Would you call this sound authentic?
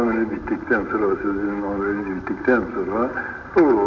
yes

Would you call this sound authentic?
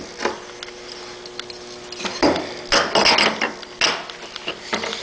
yes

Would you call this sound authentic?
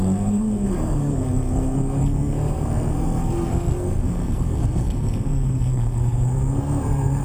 no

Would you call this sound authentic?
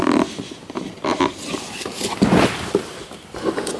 yes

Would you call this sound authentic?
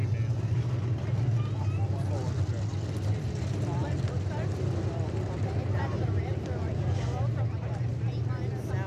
yes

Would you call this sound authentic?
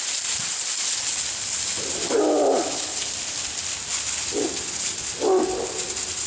yes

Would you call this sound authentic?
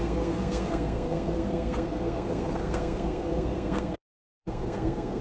no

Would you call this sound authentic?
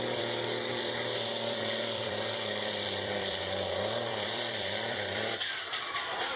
no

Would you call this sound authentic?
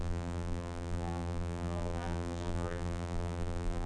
no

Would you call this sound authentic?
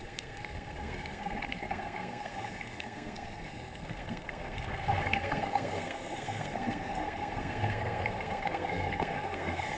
no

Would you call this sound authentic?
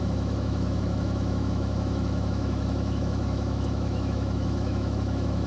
no